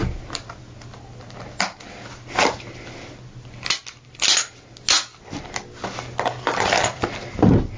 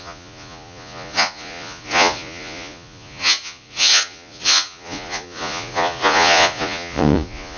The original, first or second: first